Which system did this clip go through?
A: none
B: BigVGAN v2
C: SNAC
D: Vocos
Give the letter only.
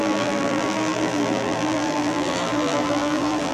B